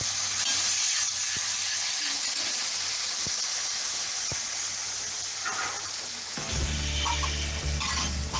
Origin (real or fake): real